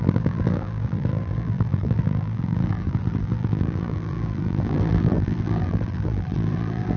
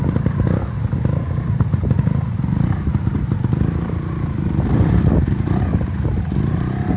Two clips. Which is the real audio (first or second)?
second